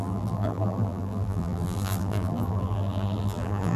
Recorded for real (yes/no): no